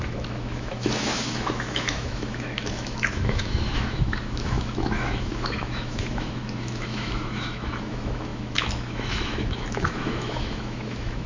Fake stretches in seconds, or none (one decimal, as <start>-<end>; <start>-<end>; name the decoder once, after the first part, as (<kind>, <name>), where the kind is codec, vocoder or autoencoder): 0.0-11.3 (autoencoder, DAC-VAE)